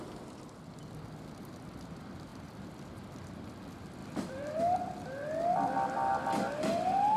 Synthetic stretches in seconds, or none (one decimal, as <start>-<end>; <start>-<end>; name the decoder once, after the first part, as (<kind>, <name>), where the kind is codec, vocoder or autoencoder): 2.3-3.5 (vocoder, BigVGAN v2); 4.0-4.6